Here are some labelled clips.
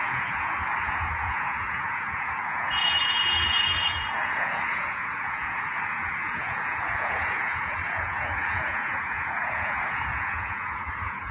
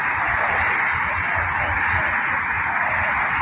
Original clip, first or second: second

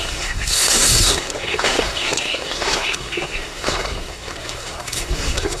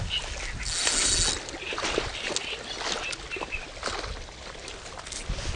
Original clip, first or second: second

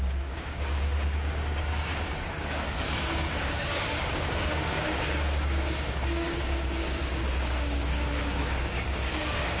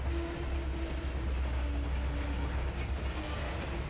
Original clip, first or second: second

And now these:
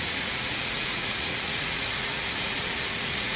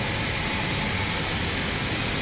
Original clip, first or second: second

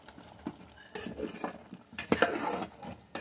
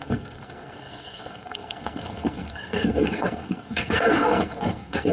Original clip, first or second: first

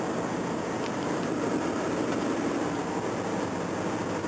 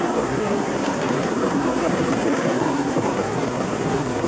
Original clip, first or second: first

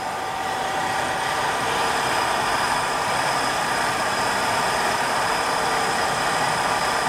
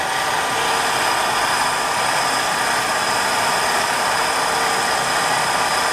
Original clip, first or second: second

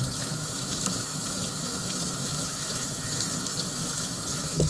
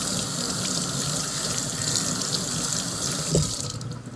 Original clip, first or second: second